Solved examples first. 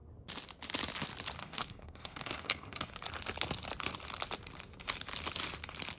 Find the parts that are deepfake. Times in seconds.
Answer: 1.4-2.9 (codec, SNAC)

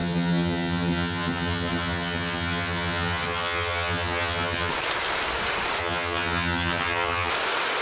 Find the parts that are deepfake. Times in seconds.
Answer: 0.0-4.7 (vocoder, HiFi-GAN); 5.8-7.3

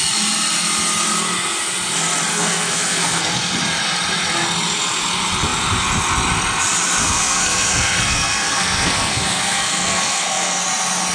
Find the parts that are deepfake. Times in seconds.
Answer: 2.3-3.2 (codec, SNAC); 7.0-10.6

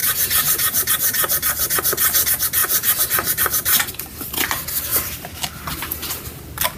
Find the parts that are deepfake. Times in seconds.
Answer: 0.0-0.9 (vocoder, BigVGAN v2); 2.6-3.9

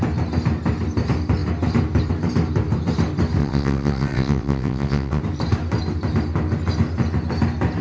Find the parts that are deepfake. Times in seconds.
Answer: 3.4-5.2 (vocoder, WaveNeXt)

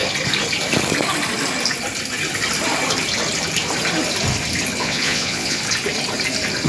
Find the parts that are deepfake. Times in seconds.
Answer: 4.8-5.6 (vocoder, Vocos)